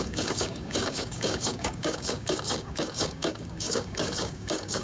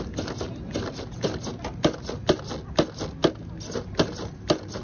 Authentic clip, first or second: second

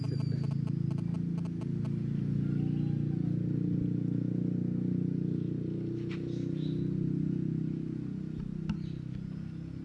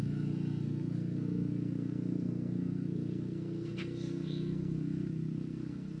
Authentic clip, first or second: first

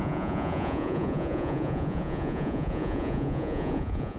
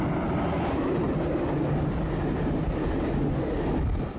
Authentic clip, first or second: second